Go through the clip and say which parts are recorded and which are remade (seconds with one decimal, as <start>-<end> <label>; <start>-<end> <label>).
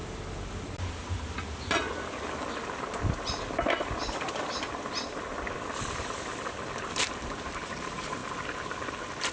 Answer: 0.0-9.3 recorded